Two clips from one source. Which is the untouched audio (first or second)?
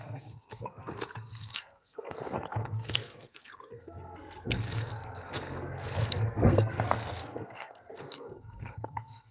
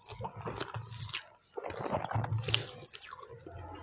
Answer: second